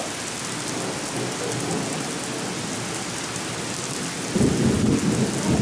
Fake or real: real